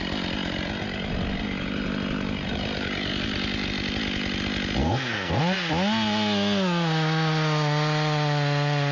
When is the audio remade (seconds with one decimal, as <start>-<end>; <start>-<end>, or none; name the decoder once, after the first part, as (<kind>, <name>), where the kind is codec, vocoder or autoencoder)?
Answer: 4.8-5.4 (codec, SNAC)